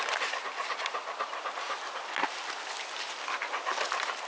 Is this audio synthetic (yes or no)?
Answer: no